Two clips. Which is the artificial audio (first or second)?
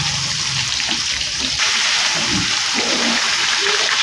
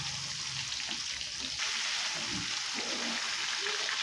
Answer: first